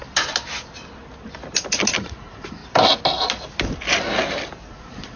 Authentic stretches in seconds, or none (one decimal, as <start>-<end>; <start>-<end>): 0.0-2.0; 2.6-4.7